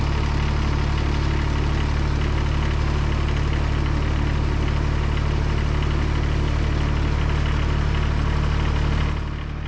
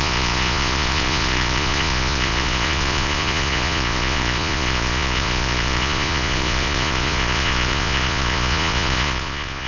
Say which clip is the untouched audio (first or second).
first